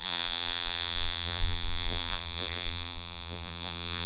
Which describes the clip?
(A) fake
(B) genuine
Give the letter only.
A